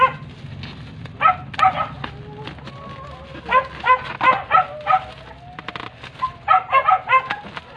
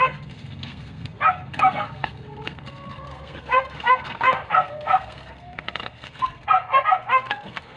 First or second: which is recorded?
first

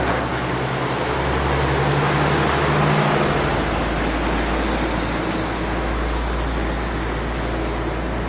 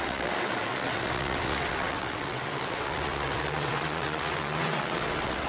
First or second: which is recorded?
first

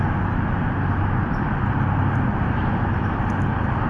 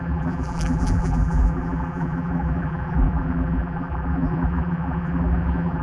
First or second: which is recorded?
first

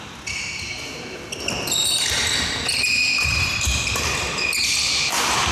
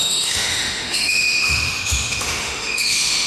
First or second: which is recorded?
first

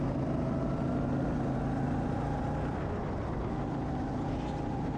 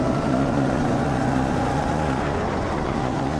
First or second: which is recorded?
first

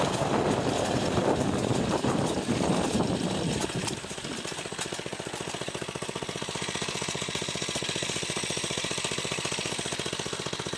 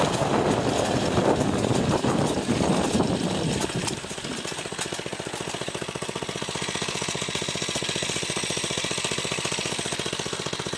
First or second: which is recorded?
second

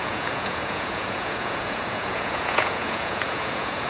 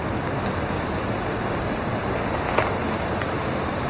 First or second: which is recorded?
second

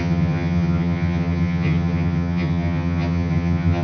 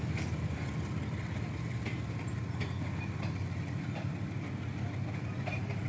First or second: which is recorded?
second